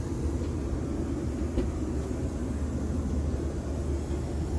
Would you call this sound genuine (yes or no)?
yes